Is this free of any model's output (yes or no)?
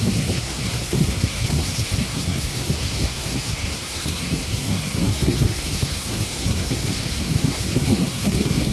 no